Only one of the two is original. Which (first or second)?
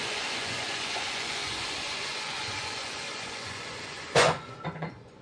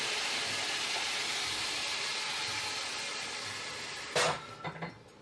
second